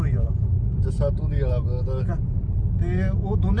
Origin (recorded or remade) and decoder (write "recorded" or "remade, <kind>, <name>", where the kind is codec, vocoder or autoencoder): recorded